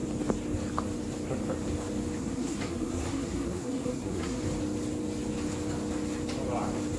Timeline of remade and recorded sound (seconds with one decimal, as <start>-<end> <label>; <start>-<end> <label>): 0.0-2.2 recorded; 2.2-4.4 remade; 4.4-7.0 recorded